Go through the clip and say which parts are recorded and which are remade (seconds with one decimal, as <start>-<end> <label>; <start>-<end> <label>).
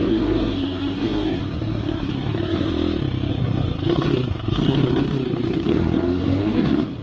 0.0-2.7 remade; 2.7-3.3 recorded; 3.3-7.0 remade